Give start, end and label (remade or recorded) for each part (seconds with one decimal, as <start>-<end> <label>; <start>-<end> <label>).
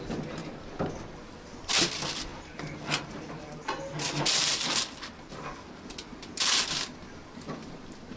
0.0-2.3 recorded; 2.3-6.7 remade; 6.7-8.2 recorded